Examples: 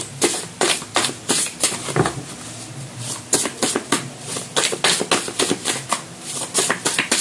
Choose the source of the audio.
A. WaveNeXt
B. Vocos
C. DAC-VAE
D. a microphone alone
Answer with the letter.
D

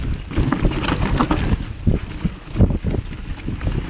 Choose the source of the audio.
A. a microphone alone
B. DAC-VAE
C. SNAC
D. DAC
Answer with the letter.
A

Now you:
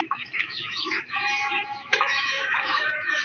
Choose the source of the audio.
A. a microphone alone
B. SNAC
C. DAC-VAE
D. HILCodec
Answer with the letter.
C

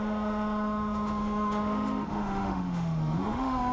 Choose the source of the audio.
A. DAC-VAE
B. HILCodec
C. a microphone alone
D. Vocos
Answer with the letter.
A